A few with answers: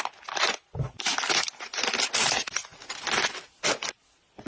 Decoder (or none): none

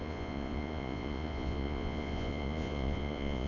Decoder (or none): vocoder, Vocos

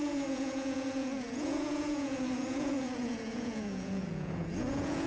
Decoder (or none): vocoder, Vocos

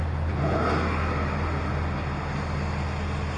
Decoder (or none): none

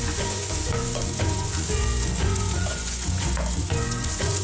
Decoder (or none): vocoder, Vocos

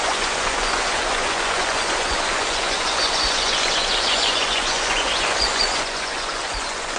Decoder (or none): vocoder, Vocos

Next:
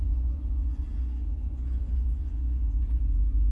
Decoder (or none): vocoder, Vocos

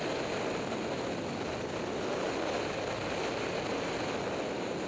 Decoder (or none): none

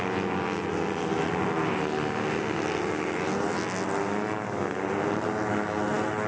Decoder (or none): none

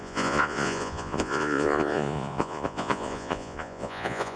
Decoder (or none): vocoder, Vocos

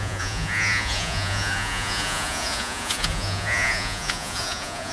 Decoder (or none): vocoder, Vocos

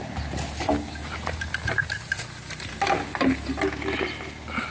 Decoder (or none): none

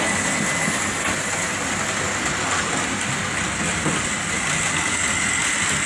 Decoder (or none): none